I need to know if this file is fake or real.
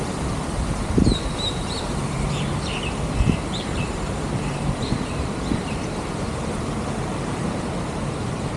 fake